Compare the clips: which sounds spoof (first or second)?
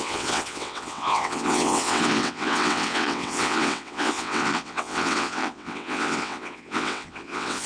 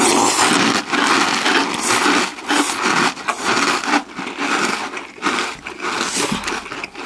first